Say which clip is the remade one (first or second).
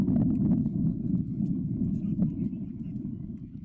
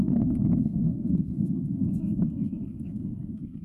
second